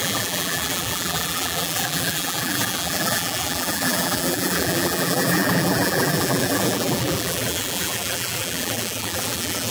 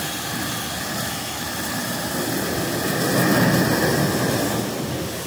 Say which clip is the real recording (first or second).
second